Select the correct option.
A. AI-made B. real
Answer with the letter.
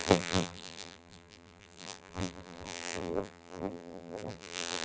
A